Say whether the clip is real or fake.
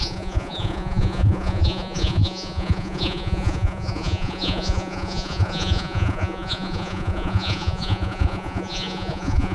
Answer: fake